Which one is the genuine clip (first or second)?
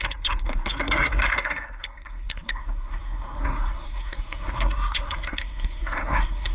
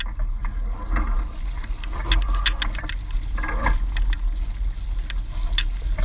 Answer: second